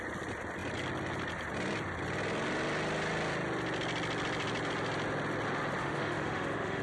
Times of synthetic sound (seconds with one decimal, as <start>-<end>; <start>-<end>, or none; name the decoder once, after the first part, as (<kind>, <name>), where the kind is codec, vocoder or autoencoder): 5.8-6.8 (autoencoder, DAC-VAE)